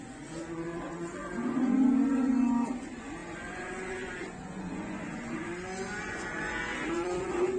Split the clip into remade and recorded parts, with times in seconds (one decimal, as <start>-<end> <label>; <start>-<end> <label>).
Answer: 0.0-5.5 remade; 5.5-6.0 recorded; 6.0-7.6 remade

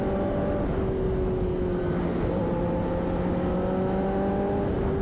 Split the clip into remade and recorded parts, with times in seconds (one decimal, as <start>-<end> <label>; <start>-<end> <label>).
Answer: 0.0-5.0 recorded